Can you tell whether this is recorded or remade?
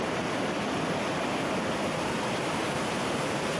recorded